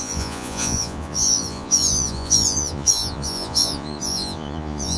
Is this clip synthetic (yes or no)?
yes